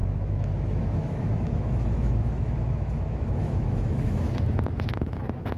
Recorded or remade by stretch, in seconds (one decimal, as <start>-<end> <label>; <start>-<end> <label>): 0.0-5.6 remade